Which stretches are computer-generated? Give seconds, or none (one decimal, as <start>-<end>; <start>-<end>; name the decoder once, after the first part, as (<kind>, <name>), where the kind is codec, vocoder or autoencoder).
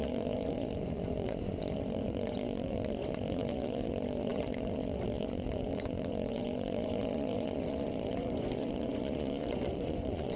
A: 0.0-10.4 (vocoder, Vocos)